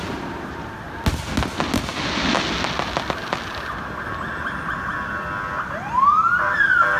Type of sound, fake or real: real